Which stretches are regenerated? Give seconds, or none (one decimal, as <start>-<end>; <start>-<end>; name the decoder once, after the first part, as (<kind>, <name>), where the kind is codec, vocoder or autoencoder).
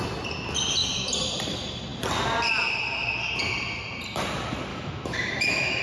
4.7-5.8 (autoencoder, DAC-VAE)